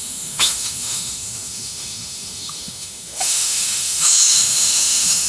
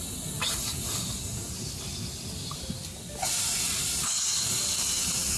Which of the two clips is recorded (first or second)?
second